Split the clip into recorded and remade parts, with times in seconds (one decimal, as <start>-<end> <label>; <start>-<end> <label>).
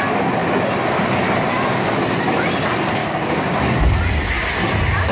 0.0-3.0 recorded; 3.0-3.6 remade; 3.6-5.1 recorded